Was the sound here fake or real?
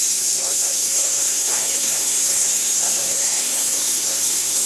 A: fake